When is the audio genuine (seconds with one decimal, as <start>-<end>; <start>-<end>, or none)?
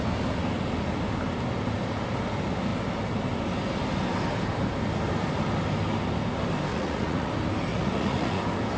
0.0-6.7; 7.3-7.7; 8.4-8.8